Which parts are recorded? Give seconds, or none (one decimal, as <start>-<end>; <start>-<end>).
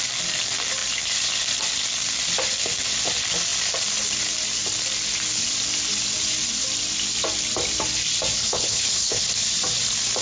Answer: 0.0-8.4; 9.2-10.2